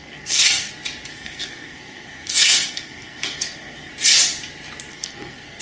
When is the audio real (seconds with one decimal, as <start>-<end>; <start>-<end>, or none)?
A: 0.7-1.1; 3.9-4.9

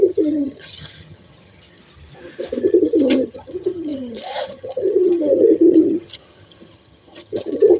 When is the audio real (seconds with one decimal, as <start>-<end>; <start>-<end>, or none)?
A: 1.8-2.6

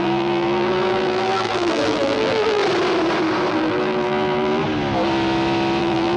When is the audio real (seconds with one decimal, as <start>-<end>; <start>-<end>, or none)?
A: 2.6-3.5; 4.6-5.8

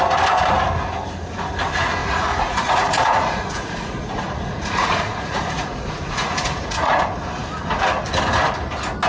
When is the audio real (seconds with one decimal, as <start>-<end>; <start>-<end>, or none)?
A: 0.0-2.0; 7.0-9.1

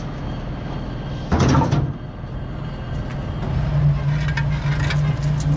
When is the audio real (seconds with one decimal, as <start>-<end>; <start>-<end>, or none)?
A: 0.0-5.6

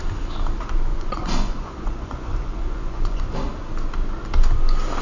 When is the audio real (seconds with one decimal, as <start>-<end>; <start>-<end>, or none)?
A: 0.0-0.9; 3.2-5.0